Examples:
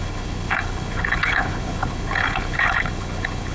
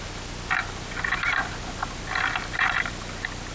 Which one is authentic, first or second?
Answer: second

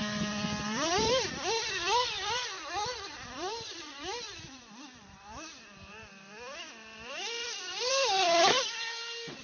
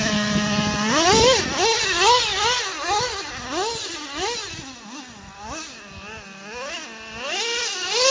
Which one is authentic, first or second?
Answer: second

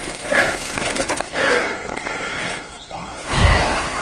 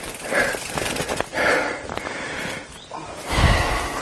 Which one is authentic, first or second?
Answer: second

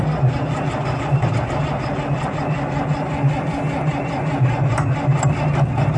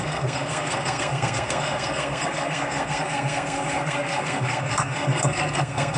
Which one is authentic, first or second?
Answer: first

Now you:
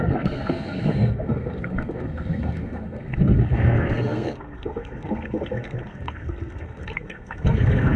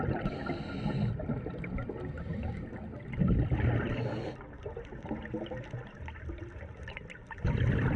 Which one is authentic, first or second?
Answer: second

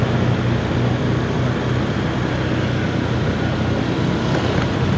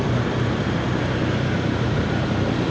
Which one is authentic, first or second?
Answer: first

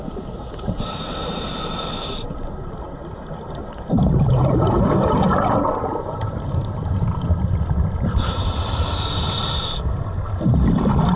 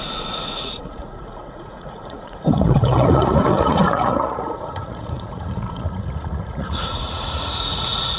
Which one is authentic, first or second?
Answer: first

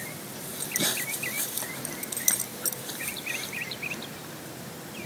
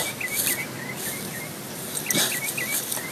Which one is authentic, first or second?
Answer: second